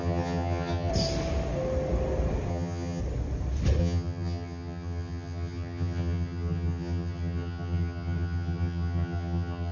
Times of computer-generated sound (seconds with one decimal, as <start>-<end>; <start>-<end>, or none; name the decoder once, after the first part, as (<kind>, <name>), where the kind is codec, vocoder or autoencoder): 0.0-0.9 (vocoder, HiFi-GAN); 2.5-3.0; 3.8-9.7